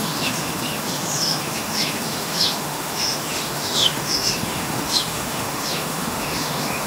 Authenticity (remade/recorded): remade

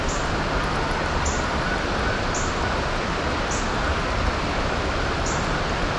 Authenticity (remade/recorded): recorded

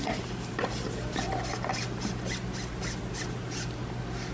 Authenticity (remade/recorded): recorded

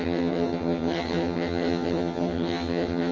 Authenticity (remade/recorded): remade